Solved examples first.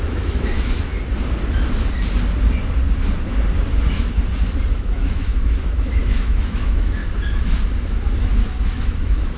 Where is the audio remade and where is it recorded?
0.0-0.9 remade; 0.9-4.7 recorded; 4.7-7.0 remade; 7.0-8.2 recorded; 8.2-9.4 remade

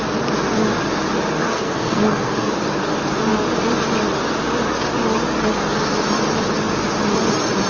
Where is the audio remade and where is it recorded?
0.0-1.5 recorded; 1.5-2.5 remade; 2.5-7.7 recorded

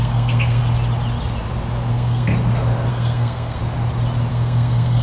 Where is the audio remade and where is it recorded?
0.0-0.6 remade; 0.6-1.9 recorded; 1.9-2.3 remade; 2.3-2.9 recorded; 2.9-3.6 remade; 3.6-4.3 recorded; 4.3-5.0 remade

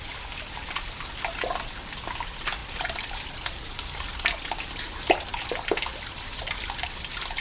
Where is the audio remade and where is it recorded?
0.0-7.4 recorded

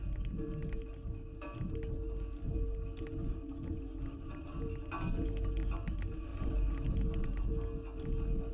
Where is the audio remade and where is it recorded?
0.0-8.5 recorded